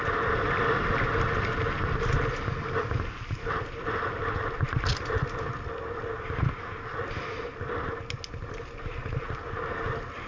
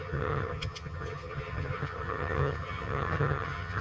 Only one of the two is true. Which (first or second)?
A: first